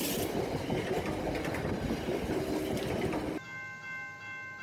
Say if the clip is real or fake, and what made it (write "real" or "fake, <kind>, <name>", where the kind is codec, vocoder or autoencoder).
real